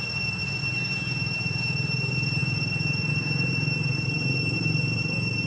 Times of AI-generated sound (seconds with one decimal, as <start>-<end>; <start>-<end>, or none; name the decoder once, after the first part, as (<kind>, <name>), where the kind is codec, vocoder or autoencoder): none